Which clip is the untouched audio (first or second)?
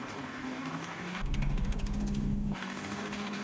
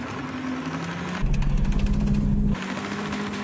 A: second